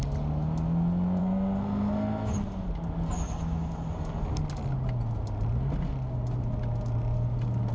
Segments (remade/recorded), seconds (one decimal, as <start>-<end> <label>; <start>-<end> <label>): 0.0-1.2 recorded; 1.2-2.3 remade; 2.3-7.7 recorded